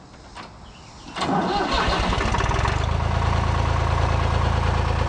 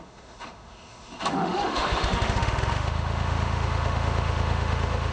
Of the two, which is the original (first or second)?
first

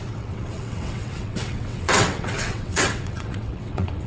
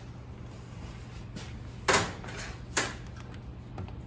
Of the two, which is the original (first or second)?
second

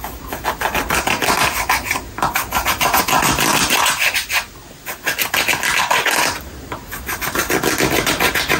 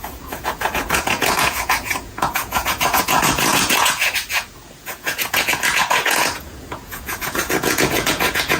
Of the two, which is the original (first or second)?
first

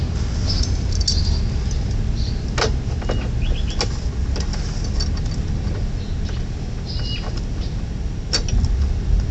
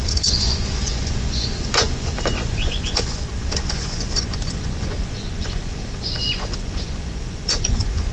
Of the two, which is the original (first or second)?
first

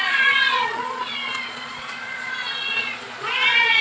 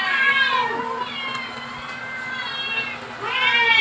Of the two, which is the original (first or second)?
second